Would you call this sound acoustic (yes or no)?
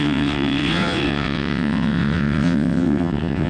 no